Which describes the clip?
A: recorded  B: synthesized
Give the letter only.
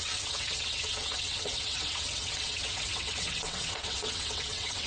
B